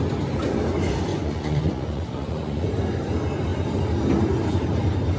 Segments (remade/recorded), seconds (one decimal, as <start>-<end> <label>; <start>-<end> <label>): 0.0-1.1 recorded; 1.1-2.7 remade; 2.7-5.2 recorded